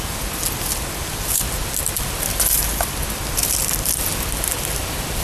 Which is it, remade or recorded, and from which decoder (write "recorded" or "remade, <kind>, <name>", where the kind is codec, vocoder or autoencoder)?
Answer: recorded